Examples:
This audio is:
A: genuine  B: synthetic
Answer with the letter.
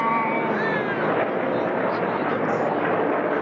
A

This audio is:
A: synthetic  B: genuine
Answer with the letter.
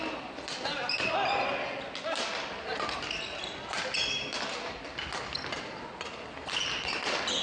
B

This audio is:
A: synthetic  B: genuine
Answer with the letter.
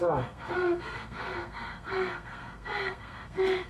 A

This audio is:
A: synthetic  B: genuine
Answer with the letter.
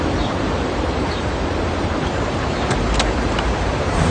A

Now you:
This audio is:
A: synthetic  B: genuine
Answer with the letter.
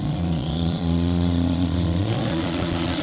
A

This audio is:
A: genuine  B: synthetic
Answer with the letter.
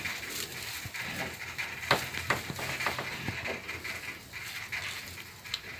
A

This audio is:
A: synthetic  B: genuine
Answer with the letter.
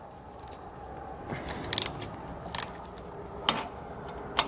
B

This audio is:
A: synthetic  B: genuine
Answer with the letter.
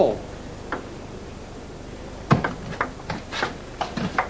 B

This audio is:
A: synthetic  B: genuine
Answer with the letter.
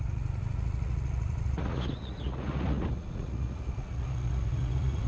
A